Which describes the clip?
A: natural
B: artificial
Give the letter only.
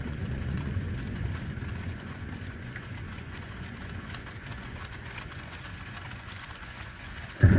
B